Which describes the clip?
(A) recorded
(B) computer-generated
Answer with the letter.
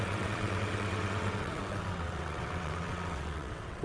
B